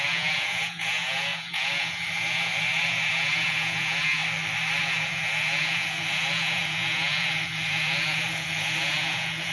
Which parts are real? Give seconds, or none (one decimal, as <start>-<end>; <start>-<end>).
4.2-4.8